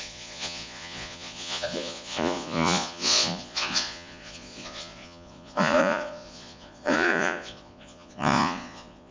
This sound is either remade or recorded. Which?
remade